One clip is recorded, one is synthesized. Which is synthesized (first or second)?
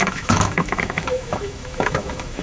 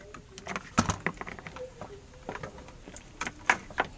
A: first